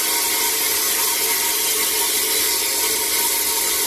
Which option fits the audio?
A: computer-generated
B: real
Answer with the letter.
B